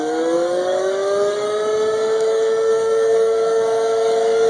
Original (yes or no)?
no